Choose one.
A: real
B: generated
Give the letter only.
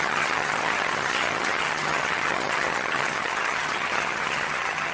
B